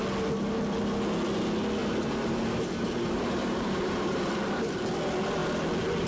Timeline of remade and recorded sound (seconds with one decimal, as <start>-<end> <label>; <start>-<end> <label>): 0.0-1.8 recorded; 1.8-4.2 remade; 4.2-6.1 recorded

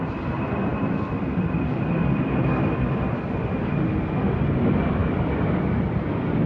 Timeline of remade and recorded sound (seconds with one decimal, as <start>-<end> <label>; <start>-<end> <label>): 0.0-6.5 remade

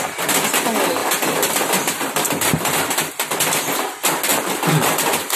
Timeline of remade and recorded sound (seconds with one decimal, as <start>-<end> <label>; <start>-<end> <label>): 0.0-1.0 recorded; 1.0-3.1 remade; 3.1-5.4 recorded

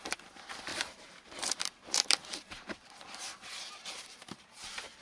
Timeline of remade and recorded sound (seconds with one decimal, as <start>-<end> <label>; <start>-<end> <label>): 0.0-5.0 remade